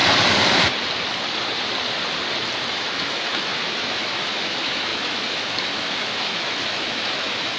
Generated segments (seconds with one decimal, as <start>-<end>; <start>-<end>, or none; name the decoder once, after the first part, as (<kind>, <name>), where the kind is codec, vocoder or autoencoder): 2.7-7.6 (autoencoder, DAC-VAE)